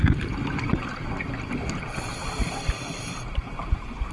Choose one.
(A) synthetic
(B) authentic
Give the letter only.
B